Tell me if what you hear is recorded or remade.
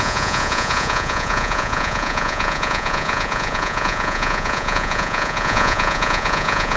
remade